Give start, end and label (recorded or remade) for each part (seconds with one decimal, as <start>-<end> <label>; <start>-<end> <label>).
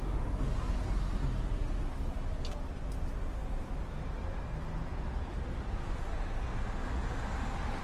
0.0-7.8 recorded